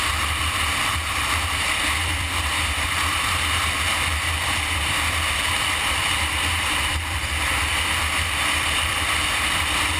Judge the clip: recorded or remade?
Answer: remade